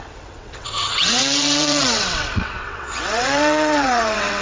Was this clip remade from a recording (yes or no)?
yes